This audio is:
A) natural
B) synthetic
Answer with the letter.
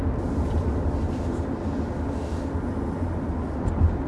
A